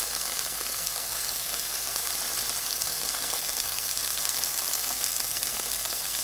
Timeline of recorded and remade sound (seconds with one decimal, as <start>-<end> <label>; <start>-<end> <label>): 0.0-2.1 remade; 2.1-2.6 recorded; 2.6-6.2 remade